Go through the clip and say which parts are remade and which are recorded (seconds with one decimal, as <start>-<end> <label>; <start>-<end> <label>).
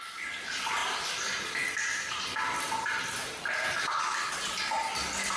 0.0-5.4 recorded